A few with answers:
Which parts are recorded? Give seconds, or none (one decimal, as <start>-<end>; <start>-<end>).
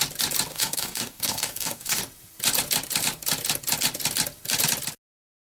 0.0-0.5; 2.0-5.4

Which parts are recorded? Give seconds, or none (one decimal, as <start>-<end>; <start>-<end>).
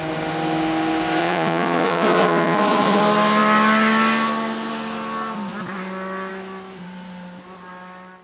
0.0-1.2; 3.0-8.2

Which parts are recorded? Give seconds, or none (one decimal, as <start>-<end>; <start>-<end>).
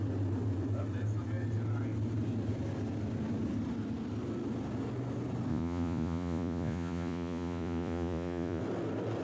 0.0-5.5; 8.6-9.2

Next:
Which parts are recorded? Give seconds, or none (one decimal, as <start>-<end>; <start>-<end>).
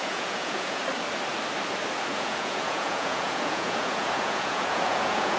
0.8-2.1